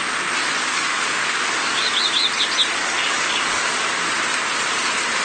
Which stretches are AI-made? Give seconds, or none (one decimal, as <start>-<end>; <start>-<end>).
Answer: 0.6-1.9; 2.8-3.9